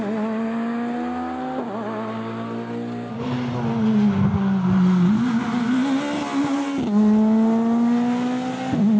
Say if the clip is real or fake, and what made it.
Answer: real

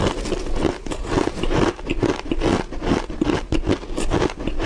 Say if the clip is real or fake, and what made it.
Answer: real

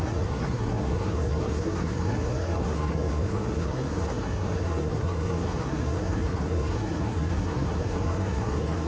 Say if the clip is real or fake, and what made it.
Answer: fake, codec, SNAC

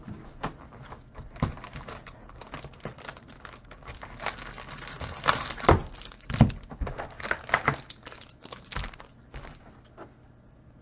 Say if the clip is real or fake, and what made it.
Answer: real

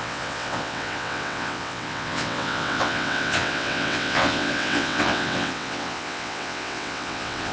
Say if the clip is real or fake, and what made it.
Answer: fake, vocoder, WaveNeXt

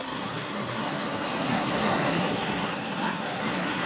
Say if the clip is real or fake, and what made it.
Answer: fake, codec, SNAC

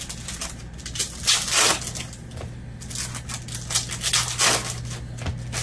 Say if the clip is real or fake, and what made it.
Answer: real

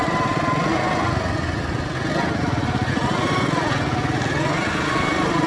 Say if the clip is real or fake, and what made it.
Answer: real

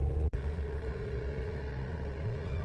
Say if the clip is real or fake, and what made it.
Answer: fake, vocoder, Vocos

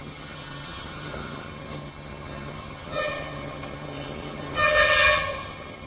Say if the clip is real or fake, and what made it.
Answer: fake, vocoder, HiFi-GAN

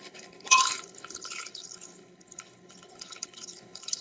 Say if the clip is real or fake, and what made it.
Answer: fake, codec, HILCodec